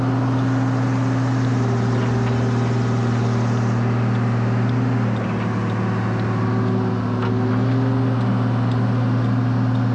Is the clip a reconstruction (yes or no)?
no